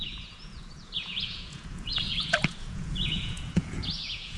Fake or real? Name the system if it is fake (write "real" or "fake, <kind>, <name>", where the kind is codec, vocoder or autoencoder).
fake, vocoder, Vocos